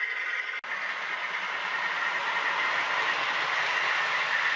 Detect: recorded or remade recorded